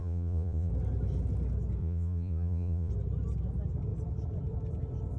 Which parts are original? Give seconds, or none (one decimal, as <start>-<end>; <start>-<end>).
0.7-1.8; 2.9-5.2